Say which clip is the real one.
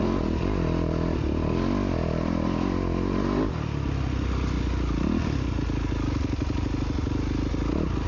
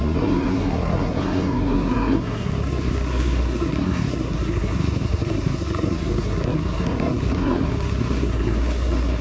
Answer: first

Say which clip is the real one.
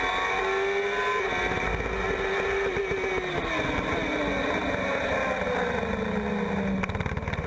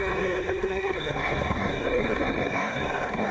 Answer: first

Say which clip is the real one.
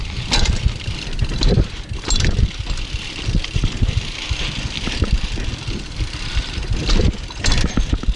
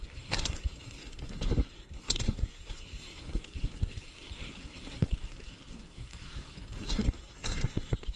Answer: first